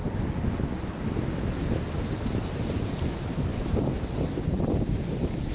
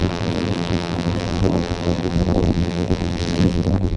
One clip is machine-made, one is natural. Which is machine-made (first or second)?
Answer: second